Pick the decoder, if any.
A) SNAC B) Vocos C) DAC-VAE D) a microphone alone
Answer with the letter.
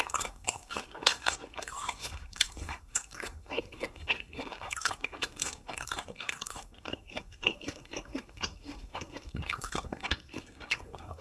A